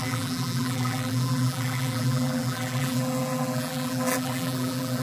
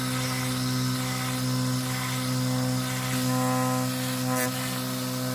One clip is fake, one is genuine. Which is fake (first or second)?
first